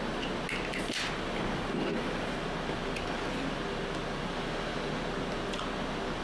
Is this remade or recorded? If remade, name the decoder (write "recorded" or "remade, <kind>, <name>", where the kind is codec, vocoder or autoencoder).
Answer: recorded